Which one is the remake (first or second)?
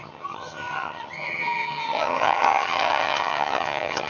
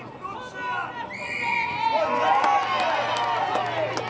first